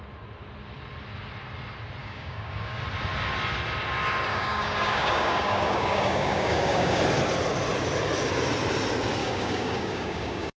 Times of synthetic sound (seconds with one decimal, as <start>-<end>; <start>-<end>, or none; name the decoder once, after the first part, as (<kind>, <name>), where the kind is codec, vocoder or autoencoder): 2.0-2.8 (codec, DAC); 4.3-7.0; 9.2-10.6